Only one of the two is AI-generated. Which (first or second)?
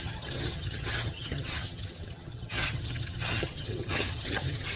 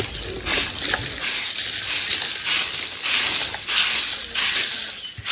first